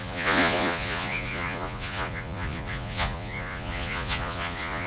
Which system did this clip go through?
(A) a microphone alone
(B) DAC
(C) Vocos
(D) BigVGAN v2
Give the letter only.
C